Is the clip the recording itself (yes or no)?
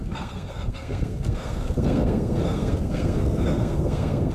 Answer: no